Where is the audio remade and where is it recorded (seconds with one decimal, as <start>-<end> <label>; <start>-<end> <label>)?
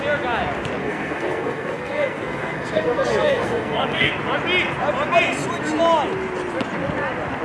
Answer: 0.0-0.8 recorded; 0.8-4.1 remade; 4.1-7.4 recorded